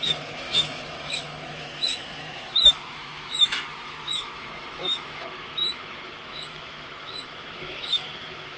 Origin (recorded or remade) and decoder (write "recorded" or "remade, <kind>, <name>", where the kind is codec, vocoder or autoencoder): remade, autoencoder, DAC-VAE